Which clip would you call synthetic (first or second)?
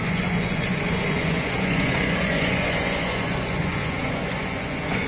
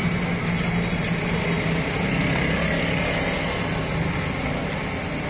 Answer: first